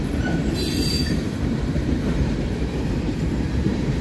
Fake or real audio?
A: fake